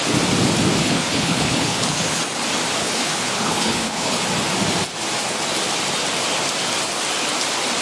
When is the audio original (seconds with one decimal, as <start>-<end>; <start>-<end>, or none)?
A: 0.0-0.8; 2.2-2.8; 4.2-7.8